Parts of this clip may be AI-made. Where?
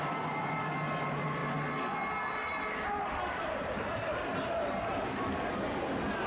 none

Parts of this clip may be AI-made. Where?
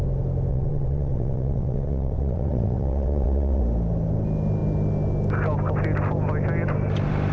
0.5-3.6 (vocoder, WaveNeXt)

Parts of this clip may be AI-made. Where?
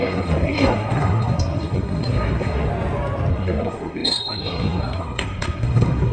0.0-2.7 (codec, SNAC); 3.3-6.1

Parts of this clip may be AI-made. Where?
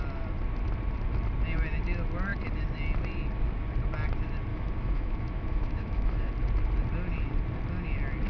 4.5-6.3 (autoencoder, DAC-VAE)